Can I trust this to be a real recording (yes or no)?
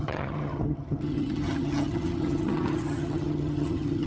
no